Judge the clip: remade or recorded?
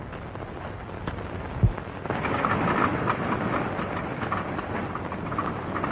recorded